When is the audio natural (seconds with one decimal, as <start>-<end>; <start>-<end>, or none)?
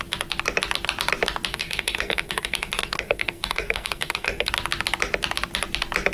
0.0-1.5; 4.5-6.1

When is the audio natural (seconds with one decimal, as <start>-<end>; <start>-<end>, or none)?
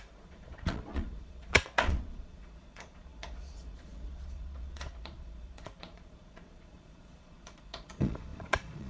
none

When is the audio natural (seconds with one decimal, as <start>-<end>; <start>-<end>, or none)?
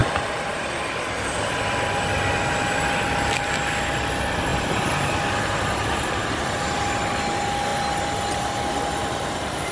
0.6-4.5; 6.8-9.0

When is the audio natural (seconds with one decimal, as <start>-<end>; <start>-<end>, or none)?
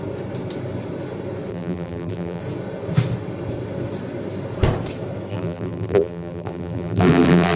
0.0-1.5; 2.4-5.3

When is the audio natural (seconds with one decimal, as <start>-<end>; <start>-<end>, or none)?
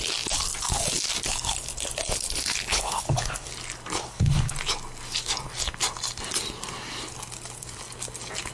0.0-2.7; 3.5-4.0; 4.5-8.5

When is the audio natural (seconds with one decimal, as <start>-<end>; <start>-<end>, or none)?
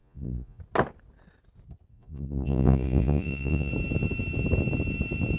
0.6-1.9; 3.7-5.4